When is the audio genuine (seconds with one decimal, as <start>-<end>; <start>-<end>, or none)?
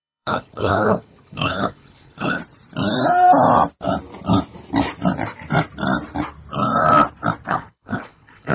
2.4-7.5